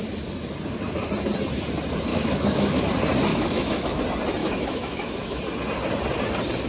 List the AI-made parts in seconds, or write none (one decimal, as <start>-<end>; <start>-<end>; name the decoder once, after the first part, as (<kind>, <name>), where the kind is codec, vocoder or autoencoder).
2.1-2.8 (autoencoder, DAC-VAE); 3.3-4.0; 4.4-5.4

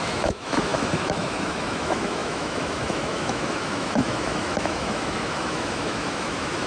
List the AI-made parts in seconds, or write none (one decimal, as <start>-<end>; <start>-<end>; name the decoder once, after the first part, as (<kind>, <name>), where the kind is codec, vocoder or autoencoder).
0.0-6.7 (autoencoder, DAC-VAE)

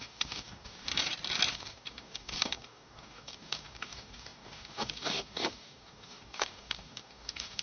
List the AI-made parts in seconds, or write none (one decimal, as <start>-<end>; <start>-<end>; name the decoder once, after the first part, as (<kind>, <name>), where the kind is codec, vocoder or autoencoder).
0.0-0.9 (codec, DAC); 1.5-7.6

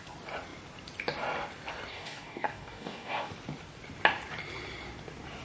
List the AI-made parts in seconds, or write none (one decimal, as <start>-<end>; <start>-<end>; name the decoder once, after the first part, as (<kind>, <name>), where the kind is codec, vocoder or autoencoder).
1.9-3.3 (codec, DAC)

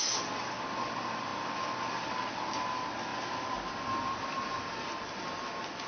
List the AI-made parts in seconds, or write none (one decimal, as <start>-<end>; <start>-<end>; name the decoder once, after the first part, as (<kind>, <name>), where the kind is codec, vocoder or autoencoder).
none

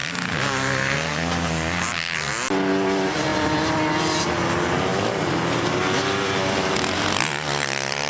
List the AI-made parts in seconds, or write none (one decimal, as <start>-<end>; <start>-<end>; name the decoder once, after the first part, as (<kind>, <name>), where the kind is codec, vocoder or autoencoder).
4.9-8.1 (vocoder, BigVGAN v2)

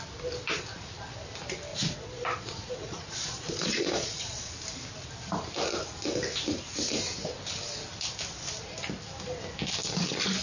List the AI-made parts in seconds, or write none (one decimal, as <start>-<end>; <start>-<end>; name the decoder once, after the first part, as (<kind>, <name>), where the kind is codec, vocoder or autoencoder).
1.7-4.5 (vocoder, Vocos)